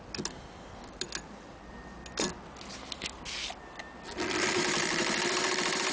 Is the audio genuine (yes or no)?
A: yes